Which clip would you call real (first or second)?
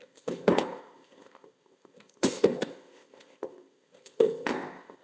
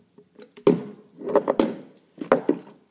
second